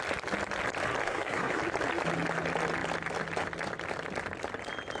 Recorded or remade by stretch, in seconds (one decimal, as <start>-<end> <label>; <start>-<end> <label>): 0.0-1.0 recorded; 1.0-1.6 remade; 1.6-5.0 recorded